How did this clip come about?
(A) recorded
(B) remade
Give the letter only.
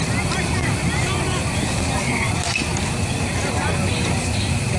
A